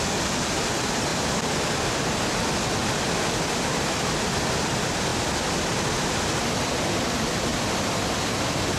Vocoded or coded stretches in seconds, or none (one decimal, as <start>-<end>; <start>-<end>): 1.1-2.3; 2.8-4.6